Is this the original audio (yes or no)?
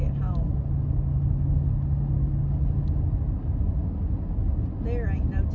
yes